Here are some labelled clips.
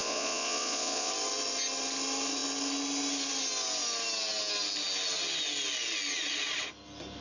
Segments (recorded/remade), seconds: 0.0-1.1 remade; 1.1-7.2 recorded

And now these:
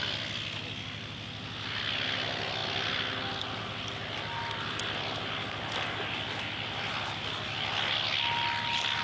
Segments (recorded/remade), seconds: 0.0-9.0 recorded

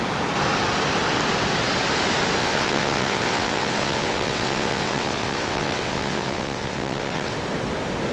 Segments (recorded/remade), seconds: 0.0-2.4 recorded; 2.4-7.3 remade; 7.3-8.1 recorded

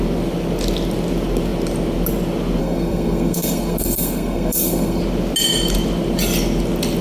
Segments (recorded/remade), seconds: 0.0-2.6 recorded; 2.6-5.0 remade; 5.0-7.0 recorded

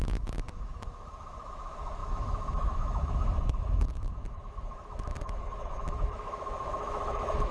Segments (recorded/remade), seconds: 0.0-7.5 remade

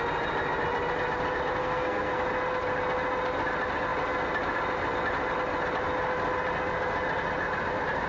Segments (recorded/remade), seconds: 0.0-1.6 recorded; 1.6-2.2 remade; 2.2-8.1 recorded